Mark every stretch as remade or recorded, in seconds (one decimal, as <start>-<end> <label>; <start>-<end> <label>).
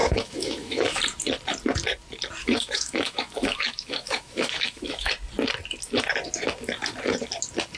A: 0.0-1.0 remade; 1.0-2.4 recorded; 2.4-5.1 remade; 5.1-7.8 recorded